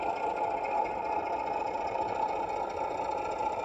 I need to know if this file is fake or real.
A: real